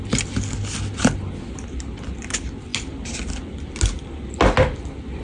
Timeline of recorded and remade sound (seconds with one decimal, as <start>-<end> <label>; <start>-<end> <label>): 0.0-5.2 recorded